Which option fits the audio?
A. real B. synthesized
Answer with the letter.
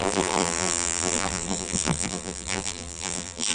B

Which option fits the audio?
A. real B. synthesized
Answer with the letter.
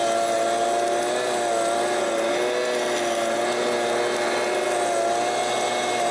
A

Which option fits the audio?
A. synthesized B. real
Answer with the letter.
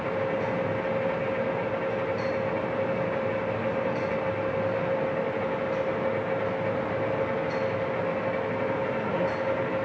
B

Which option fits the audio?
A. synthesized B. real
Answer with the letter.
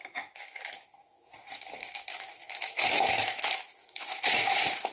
A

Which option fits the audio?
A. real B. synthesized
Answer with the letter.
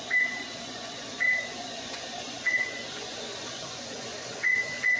B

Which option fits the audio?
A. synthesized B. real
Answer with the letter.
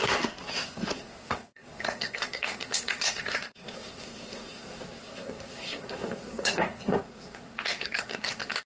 A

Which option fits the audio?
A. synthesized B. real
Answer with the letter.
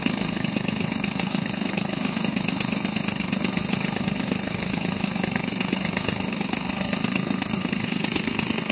A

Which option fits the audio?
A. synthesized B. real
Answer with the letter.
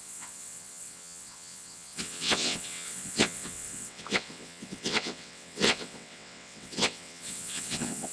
A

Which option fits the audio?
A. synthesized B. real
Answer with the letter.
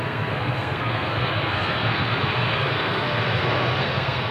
A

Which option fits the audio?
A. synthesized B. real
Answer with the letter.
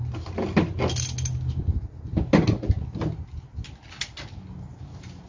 B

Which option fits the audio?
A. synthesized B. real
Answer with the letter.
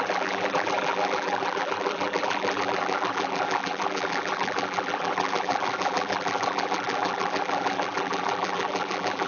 A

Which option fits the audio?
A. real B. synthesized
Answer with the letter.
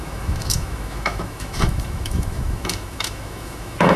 B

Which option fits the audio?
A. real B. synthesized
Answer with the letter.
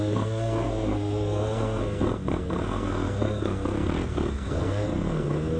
B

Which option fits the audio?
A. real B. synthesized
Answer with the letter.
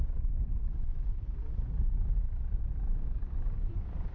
A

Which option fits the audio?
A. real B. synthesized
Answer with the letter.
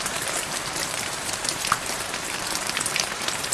B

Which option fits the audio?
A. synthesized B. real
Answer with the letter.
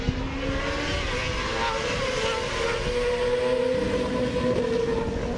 B